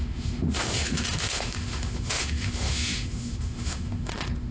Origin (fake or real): fake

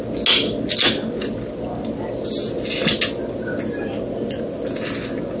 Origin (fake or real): real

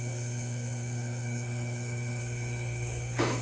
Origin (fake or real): fake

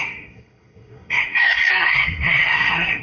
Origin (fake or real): fake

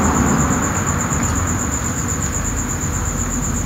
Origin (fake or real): real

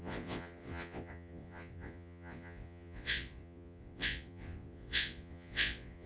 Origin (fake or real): fake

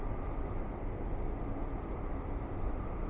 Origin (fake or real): real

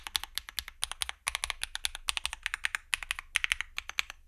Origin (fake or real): real